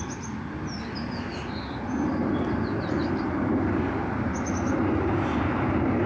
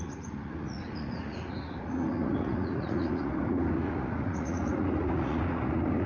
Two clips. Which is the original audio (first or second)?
first